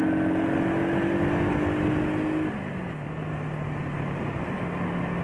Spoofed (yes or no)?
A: no